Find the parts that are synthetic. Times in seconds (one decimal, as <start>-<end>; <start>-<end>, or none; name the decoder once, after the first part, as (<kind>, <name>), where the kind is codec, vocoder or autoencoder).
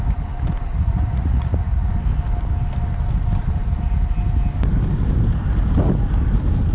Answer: 0.7-1.9 (vocoder, Vocos)